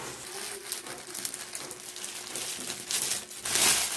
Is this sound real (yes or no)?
yes